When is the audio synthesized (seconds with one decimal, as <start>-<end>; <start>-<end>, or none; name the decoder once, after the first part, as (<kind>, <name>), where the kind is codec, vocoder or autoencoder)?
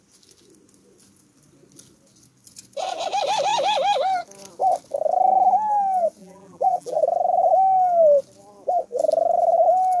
6.2-7.0 (vocoder, BigVGAN v2)